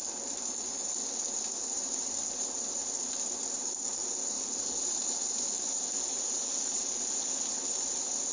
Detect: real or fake real